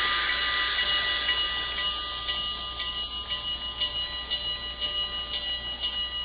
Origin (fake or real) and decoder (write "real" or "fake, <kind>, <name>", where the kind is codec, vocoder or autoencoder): real